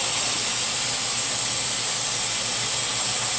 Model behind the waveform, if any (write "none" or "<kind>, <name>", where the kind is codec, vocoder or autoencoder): none